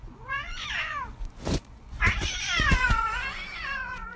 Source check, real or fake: fake